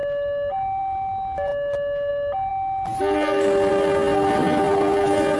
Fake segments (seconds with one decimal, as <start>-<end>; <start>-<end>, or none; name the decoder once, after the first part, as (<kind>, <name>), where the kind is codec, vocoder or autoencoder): none